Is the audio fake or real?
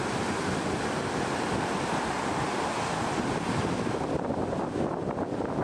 real